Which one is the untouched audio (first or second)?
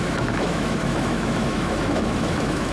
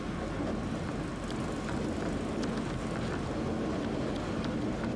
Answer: second